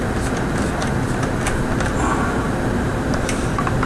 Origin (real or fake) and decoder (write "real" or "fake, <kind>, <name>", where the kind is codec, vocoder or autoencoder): real